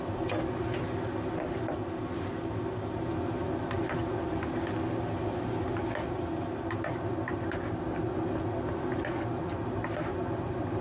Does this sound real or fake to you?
real